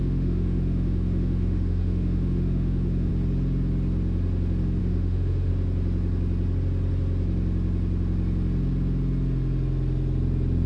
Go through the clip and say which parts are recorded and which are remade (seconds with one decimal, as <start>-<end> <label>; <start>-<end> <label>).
0.0-3.1 remade; 3.1-4.8 recorded; 4.8-5.5 remade; 5.5-10.7 recorded